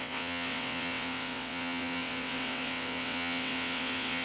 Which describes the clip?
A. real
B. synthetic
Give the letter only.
B